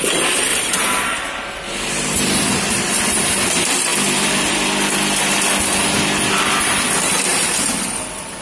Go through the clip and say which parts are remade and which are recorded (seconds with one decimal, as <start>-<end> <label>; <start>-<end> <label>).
0.0-0.5 recorded; 0.5-2.7 remade; 2.7-8.4 recorded